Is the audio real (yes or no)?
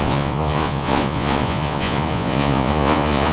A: no